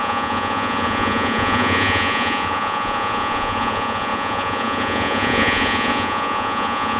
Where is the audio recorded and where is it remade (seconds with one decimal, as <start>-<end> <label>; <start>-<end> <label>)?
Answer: 0.0-7.0 remade